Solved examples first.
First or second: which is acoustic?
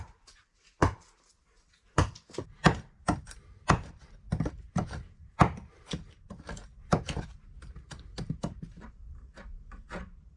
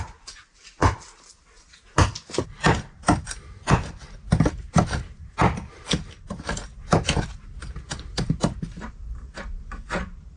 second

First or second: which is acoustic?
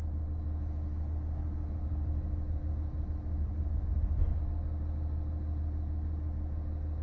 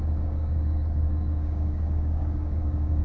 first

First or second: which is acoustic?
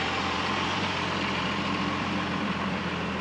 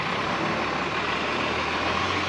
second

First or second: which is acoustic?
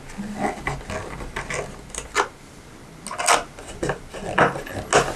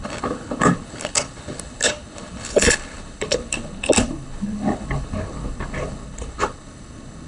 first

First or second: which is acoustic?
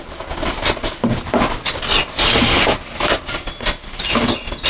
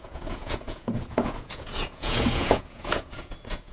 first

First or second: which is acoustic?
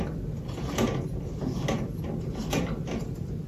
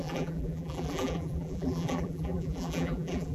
first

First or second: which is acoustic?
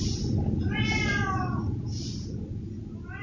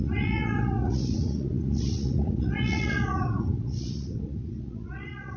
first